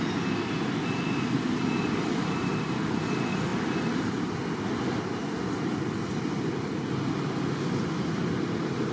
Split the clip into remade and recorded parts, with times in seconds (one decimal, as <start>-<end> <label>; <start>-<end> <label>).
0.0-8.9 recorded